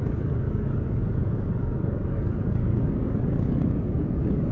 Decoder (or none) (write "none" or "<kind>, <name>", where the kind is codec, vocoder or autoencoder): codec, DAC